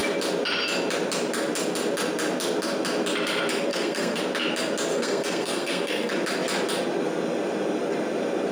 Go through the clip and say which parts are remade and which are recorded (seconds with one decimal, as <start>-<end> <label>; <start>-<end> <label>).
0.0-3.7 recorded; 3.7-4.2 remade; 4.2-4.9 recorded; 4.9-6.1 remade; 6.1-8.5 recorded